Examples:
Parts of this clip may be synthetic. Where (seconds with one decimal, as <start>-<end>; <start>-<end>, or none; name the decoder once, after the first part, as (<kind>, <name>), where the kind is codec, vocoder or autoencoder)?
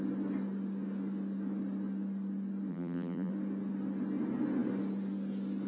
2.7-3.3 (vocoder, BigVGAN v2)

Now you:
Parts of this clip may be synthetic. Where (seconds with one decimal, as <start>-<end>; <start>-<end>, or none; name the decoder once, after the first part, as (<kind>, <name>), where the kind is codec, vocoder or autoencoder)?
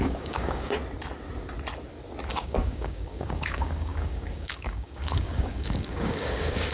0.0-0.8 (codec, DAC); 2.3-6.7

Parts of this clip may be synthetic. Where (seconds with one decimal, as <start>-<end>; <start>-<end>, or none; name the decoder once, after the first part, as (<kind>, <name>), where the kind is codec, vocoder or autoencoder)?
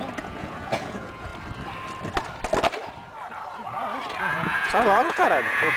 0.0-1.3 (vocoder, Vocos); 4.2-5.8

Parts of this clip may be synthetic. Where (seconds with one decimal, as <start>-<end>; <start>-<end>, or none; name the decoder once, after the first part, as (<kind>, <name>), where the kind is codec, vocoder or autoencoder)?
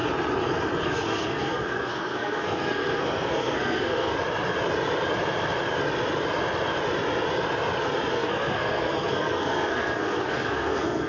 0.8-4.1 (codec, SNAC); 8.1-11.1